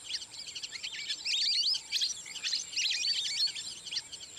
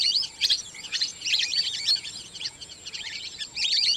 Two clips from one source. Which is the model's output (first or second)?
second